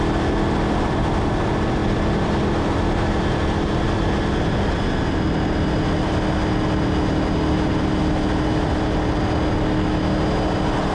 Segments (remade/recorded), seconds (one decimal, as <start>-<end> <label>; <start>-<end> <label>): 0.0-1.8 recorded; 1.8-4.1 remade; 4.1-10.9 recorded